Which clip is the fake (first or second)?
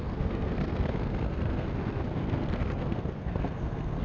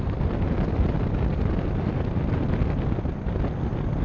first